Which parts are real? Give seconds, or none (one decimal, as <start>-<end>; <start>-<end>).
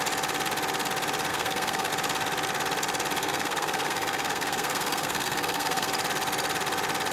0.0-1.3; 1.9-3.2; 5.9-7.1